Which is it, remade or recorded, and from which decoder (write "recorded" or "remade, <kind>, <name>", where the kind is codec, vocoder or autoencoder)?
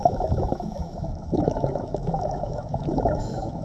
remade, autoencoder, DAC-VAE